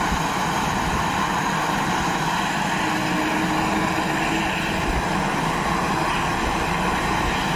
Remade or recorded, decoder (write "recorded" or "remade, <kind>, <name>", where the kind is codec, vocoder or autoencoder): recorded